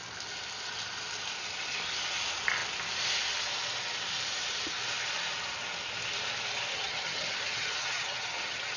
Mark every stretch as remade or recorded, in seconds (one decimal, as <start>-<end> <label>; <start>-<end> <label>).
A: 0.0-6.7 recorded; 6.7-8.8 remade